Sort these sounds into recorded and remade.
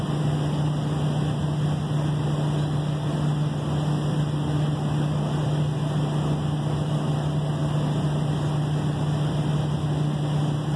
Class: recorded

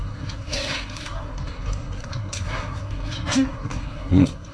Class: remade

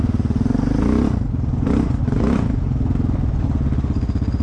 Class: recorded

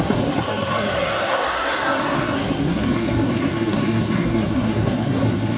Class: remade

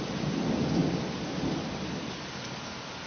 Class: recorded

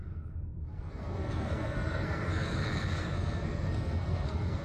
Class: remade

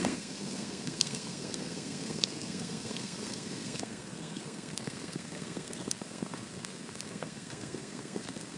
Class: remade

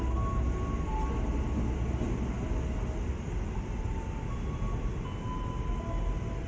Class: recorded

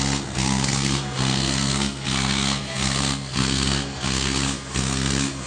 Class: remade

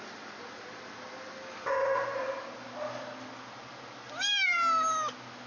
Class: recorded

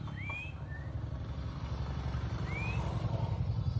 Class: recorded